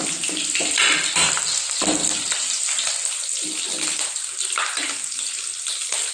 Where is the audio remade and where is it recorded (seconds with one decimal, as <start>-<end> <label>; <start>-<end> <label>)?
0.0-6.1 recorded